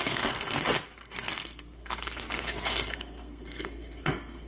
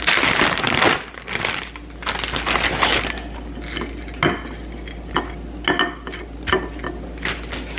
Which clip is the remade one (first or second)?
first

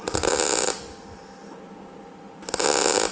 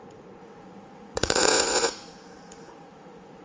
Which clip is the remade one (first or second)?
second